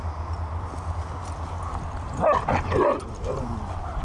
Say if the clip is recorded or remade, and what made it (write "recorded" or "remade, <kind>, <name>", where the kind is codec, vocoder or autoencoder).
recorded